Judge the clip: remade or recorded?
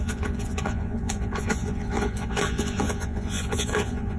remade